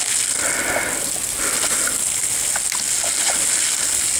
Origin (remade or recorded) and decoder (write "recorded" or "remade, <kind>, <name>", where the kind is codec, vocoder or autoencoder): recorded